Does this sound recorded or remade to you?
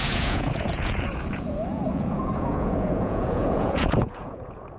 remade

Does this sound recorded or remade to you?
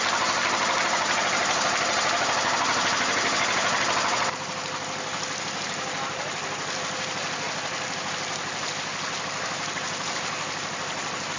recorded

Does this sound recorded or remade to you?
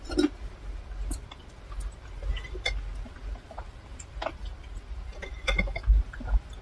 recorded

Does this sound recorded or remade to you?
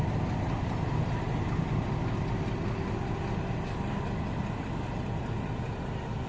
recorded